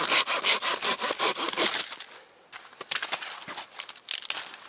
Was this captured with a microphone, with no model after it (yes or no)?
yes